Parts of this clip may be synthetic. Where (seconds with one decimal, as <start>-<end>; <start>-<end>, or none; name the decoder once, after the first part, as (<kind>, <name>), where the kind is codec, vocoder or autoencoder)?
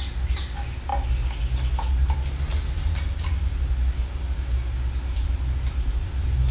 none